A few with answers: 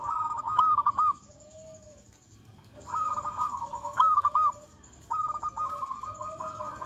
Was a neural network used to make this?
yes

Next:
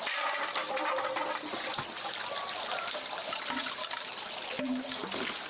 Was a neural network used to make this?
no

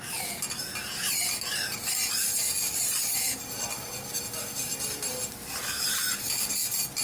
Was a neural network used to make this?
no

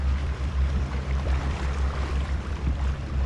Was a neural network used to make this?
yes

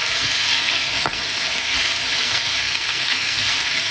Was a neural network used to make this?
yes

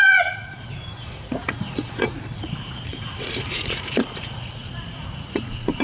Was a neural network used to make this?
yes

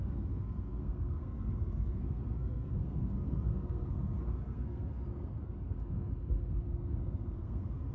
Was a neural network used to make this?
yes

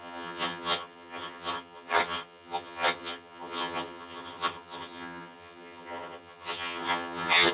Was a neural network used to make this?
yes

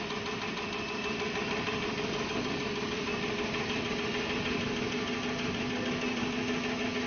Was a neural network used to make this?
no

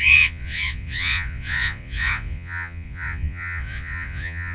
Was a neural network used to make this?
yes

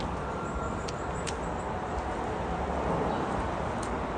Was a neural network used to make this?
no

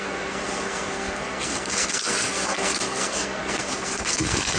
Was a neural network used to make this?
yes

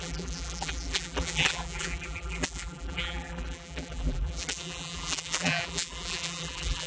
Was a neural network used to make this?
yes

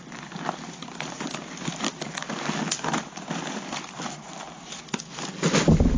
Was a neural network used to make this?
no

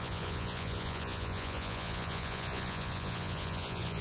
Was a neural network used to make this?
yes